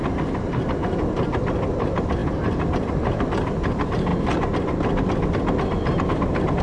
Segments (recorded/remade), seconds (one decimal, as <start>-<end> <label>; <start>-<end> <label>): 0.0-6.6 recorded